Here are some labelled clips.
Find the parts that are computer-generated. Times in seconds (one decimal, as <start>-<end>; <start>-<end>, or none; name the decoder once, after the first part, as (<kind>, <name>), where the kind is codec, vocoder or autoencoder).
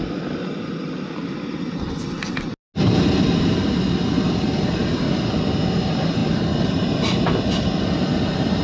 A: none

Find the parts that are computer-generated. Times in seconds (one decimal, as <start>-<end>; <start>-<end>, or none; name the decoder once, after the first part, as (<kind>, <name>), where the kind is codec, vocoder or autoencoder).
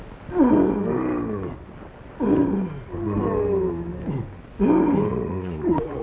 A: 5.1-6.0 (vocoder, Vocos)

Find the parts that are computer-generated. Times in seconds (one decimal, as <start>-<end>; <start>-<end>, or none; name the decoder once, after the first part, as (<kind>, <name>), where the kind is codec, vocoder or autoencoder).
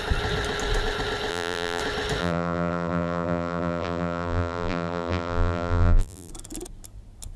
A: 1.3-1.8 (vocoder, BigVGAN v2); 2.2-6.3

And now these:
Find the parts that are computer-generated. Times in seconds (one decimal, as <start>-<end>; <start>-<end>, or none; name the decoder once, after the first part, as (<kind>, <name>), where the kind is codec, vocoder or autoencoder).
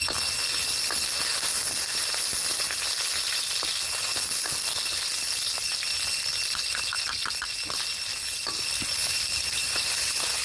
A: 8.1-9.9 (vocoder, BigVGAN v2)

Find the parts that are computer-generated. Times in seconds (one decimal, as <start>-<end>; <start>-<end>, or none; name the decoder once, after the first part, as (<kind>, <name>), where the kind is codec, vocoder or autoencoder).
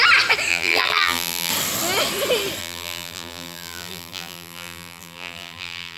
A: 0.5-1.5 (vocoder, BigVGAN v2); 2.6-6.0